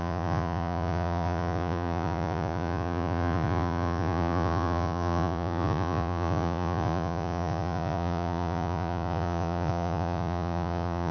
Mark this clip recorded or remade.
remade